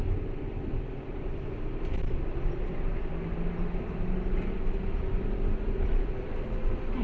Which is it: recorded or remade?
recorded